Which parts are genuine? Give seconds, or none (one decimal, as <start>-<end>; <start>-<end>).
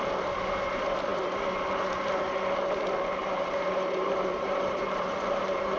0.0-3.2